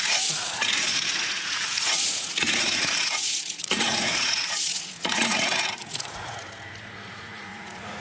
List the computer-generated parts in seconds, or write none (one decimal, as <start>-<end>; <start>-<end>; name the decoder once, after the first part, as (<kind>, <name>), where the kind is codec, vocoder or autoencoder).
0.0-8.0 (vocoder, Vocos)

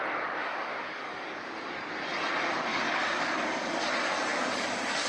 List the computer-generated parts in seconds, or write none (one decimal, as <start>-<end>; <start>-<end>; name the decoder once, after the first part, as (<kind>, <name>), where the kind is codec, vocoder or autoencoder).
0.4-1.5 (codec, DAC); 2.7-3.8; 4.3-5.1

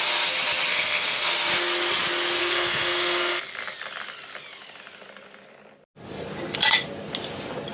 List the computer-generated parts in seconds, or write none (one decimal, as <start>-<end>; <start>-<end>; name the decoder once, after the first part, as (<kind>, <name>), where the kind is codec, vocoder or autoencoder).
0.7-1.3 (codec, SNAC); 2.4-3.4